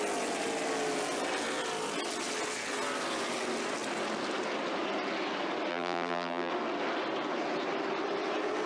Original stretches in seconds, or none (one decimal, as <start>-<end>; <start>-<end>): 0.0-5.7; 6.5-8.7